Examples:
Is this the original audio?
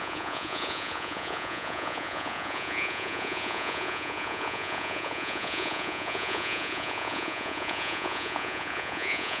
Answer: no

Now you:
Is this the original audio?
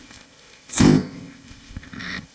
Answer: no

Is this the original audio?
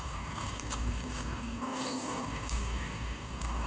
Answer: no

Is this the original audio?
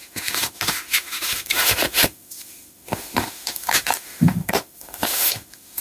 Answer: no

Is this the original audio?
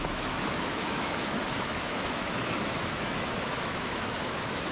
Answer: no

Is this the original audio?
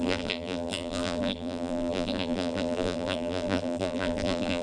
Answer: no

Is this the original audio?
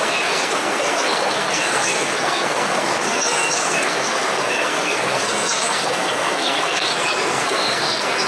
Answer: no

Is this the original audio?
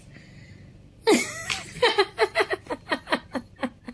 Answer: no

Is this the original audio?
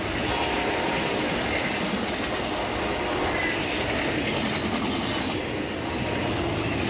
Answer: yes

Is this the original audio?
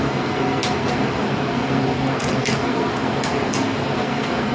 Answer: no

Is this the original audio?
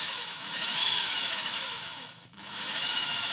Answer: no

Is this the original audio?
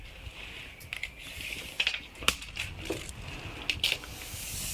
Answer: yes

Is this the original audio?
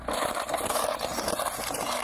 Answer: no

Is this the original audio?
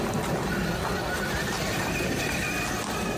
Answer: yes